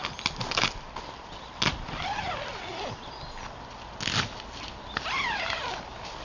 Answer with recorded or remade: recorded